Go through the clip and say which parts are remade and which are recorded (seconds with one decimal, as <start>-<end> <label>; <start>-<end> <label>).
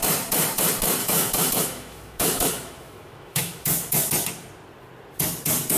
0.0-1.0 recorded; 1.0-4.1 remade; 4.1-5.8 recorded